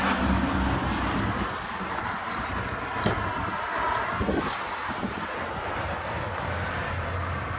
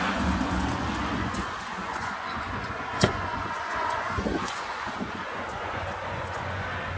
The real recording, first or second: first